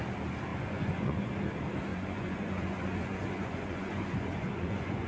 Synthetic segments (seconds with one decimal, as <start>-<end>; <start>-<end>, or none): 0.5-1.3; 1.9-5.1